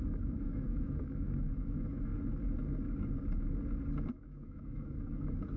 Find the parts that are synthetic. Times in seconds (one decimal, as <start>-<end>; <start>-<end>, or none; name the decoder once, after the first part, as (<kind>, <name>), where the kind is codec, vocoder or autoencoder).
0.0-2.1 (autoencoder, DAC-VAE); 4.0-5.6